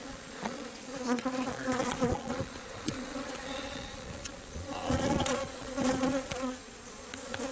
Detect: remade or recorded remade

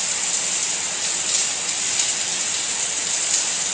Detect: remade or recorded recorded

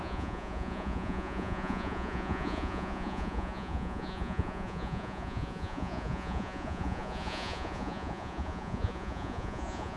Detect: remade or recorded remade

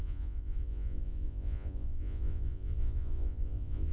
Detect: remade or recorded remade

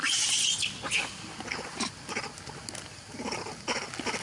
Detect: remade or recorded recorded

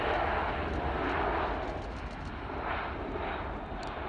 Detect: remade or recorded recorded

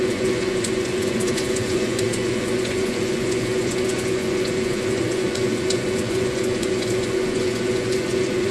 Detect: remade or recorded remade